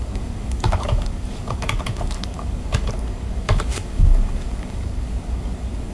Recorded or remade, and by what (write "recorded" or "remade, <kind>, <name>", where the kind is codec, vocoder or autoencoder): remade, codec, DAC